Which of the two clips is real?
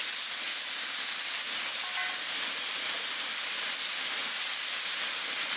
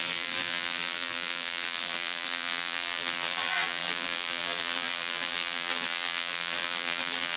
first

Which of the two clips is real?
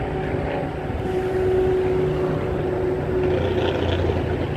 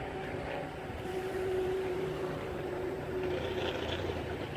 first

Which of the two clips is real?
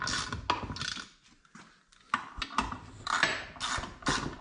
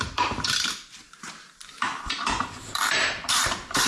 first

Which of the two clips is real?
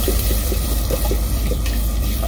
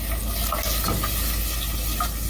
second